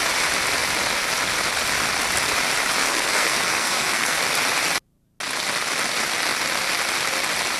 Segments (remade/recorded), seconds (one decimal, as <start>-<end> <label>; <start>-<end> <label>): 0.0-2.8 recorded; 2.8-4.2 remade; 4.2-7.6 recorded